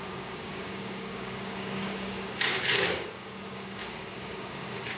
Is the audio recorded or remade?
remade